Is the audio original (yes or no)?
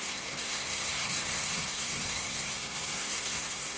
no